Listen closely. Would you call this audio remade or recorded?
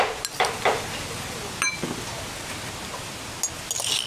recorded